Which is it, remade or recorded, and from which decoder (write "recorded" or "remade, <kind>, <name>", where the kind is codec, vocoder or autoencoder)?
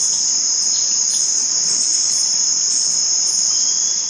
recorded